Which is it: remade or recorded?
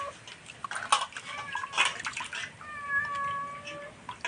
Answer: recorded